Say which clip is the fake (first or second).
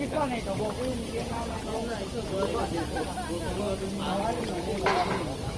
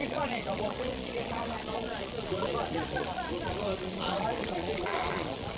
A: second